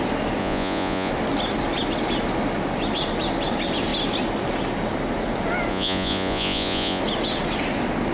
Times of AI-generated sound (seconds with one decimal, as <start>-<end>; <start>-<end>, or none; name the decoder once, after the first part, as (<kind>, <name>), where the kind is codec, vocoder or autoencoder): 0.4-1.1 (vocoder, Vocos); 5.7-7.0